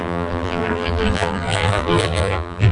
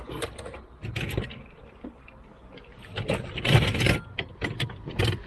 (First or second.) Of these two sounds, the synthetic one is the first